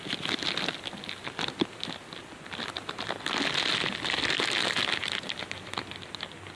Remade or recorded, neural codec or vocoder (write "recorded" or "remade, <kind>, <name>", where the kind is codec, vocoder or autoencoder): recorded